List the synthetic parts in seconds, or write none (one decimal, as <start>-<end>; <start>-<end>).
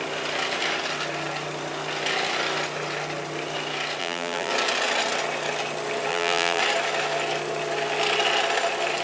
4.0-4.5; 6.1-6.6